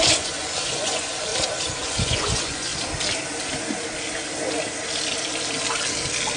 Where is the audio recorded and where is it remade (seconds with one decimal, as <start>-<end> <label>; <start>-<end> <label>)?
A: 0.0-1.3 remade; 1.3-1.8 recorded; 1.8-2.7 remade; 2.7-6.4 recorded

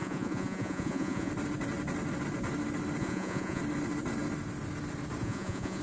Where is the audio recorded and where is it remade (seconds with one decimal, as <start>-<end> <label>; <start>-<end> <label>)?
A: 0.0-1.3 remade; 1.3-3.0 recorded; 3.0-3.6 remade; 3.6-5.2 recorded; 5.2-5.8 remade